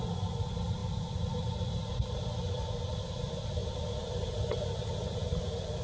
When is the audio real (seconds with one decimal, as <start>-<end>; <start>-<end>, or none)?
0.0-5.8